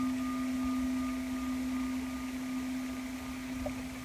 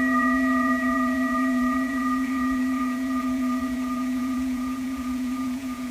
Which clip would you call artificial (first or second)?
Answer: second